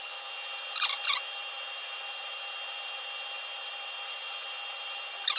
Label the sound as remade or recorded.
recorded